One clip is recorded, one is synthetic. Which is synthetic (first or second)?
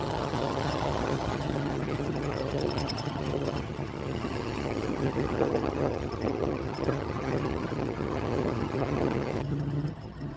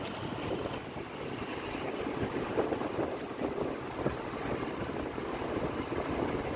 first